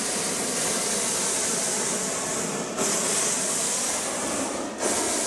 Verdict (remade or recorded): recorded